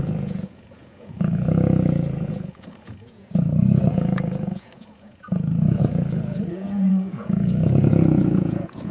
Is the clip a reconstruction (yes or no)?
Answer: yes